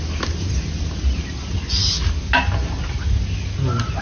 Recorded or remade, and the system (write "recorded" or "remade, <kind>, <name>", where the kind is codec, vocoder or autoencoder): recorded